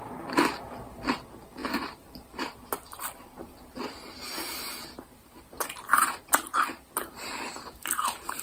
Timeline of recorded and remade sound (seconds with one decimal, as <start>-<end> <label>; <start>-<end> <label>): 0.0-1.6 recorded; 1.6-2.6 remade; 2.6-3.4 recorded; 3.4-8.4 remade